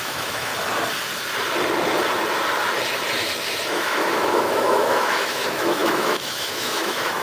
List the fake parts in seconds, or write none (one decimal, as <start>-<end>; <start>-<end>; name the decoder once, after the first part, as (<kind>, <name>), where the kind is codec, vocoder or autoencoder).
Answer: 0.0-0.5 (autoencoder, DAC-VAE); 3.7-7.2